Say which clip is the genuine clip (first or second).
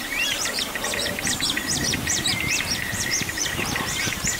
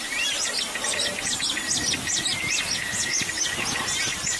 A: second